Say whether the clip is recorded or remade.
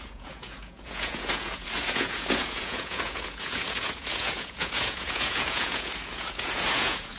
remade